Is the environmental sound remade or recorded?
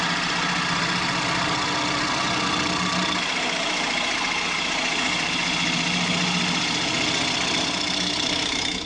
recorded